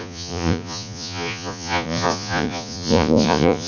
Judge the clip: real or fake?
fake